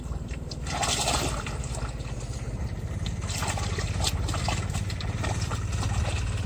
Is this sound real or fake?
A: fake